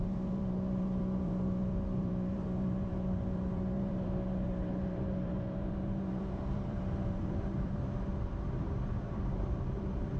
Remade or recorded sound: remade